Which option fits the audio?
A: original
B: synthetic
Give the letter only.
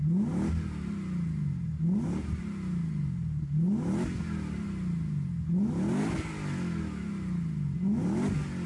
A